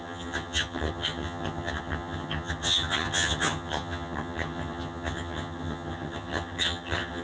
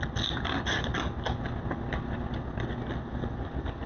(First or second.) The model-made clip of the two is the first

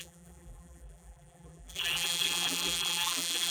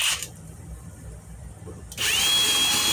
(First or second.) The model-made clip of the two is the first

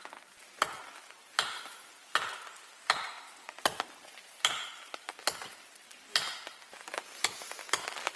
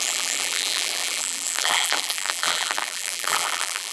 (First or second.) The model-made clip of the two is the second